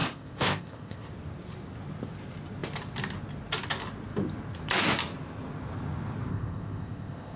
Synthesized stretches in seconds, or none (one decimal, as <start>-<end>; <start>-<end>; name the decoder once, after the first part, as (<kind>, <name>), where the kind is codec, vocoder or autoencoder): 0.0-1.1 (codec, ZipCodec); 6.3-7.4